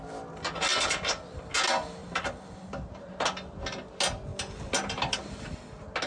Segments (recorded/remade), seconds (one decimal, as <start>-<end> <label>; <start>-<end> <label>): 0.0-0.7 recorded; 0.7-1.4 remade; 1.4-2.0 recorded; 2.0-3.1 remade; 3.1-6.1 recorded